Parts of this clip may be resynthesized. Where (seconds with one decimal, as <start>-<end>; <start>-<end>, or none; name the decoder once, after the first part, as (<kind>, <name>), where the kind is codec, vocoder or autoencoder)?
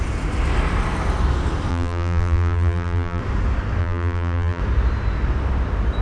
1.7-3.2 (vocoder, BigVGAN v2); 3.8-4.6